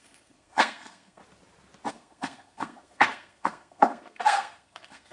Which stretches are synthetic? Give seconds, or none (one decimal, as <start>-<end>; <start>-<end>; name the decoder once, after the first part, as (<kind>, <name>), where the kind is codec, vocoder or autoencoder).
0.0-1.2 (codec, SNAC); 1.9-5.1